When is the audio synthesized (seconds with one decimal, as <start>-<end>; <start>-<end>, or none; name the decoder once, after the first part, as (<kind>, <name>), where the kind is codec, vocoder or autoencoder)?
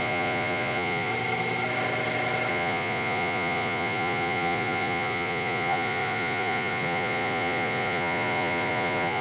0.0-1.1 (vocoder, Vocos); 2.5-9.2